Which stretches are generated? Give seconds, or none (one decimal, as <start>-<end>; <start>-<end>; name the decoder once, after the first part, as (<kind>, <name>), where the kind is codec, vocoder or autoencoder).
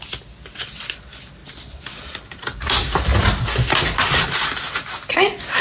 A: none